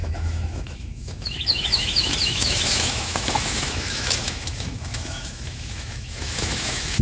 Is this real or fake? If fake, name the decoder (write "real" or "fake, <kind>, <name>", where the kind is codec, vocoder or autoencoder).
fake, autoencoder, DAC-VAE